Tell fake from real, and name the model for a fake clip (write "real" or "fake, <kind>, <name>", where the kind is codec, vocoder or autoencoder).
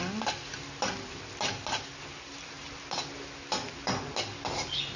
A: real